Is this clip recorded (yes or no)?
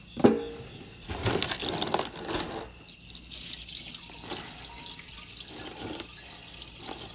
yes